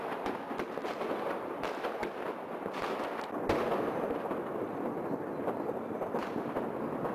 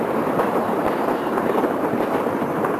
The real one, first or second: first